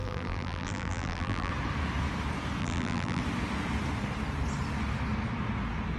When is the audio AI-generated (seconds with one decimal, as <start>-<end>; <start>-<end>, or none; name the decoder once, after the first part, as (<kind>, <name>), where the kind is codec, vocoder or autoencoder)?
0.0-1.5 (vocoder, BigVGAN v2); 2.6-3.2